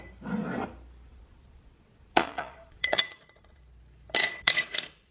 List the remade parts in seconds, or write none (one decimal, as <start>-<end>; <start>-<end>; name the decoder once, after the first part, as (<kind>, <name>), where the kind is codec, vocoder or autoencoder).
1.1-3.6 (vocoder, Vocos); 4.2-5.1

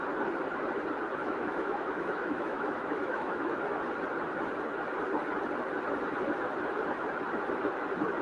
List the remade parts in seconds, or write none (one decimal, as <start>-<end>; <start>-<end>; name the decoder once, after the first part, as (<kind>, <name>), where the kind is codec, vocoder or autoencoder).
1.2-3.6 (autoencoder, DAC-VAE)

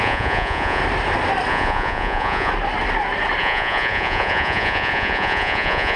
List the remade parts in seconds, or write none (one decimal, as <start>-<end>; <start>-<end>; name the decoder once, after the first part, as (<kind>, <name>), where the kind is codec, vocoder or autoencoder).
0.0-0.8 (vocoder, Vocos); 1.5-2.5; 3.4-6.0

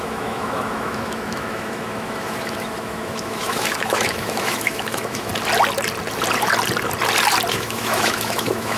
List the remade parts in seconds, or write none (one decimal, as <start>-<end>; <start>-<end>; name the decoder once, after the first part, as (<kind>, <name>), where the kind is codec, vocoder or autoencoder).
0.0-5.3 (autoencoder, DAC-VAE); 7.5-8.8